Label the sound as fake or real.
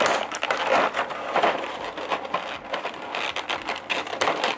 real